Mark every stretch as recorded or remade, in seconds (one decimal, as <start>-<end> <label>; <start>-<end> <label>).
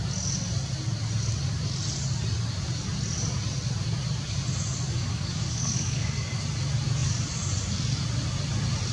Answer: 0.0-5.0 recorded; 5.0-6.4 remade; 6.4-8.9 recorded